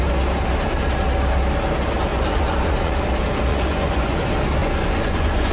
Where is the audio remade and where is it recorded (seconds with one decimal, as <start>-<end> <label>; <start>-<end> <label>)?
0.0-2.1 recorded; 2.1-3.0 remade; 3.0-3.5 recorded; 3.5-4.1 remade; 4.1-4.6 recorded; 4.6-5.5 remade